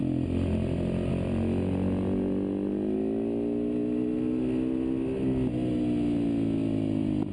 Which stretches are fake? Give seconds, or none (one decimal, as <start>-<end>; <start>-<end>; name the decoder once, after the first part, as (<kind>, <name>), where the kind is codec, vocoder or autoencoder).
none